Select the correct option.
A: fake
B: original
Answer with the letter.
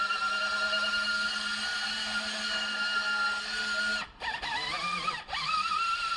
B